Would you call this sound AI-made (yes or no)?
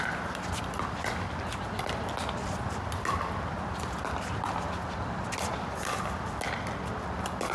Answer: no